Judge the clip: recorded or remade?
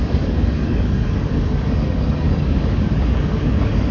remade